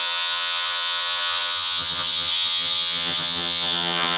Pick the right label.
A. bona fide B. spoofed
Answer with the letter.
B